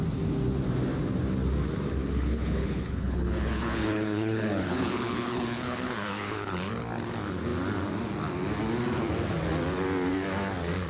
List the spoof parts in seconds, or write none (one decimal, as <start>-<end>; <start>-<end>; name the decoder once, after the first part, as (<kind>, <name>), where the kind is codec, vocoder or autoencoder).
2.0-6.7 (codec, HILCodec)